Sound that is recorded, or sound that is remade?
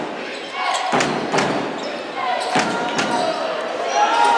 recorded